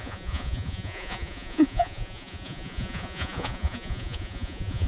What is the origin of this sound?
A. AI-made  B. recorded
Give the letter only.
A